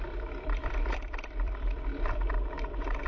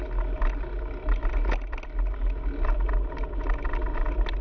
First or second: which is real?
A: second